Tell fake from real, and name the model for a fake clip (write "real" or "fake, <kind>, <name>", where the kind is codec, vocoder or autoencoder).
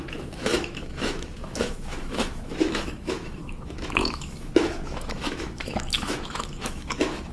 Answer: fake, autoencoder, DAC-VAE